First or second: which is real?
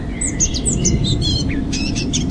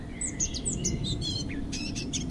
first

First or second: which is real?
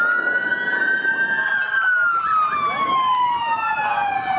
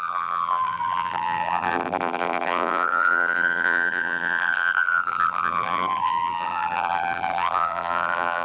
first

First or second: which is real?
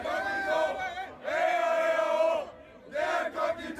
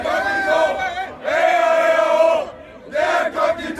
first